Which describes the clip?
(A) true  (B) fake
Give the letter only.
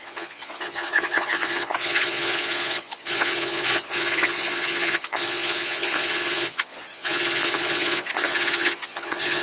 B